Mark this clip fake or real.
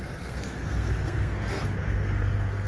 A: fake